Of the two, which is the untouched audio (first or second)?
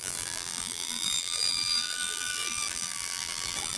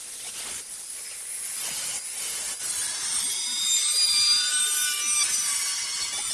second